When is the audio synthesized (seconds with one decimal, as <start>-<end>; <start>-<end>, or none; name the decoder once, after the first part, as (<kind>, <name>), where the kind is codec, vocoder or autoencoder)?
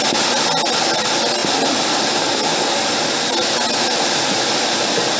none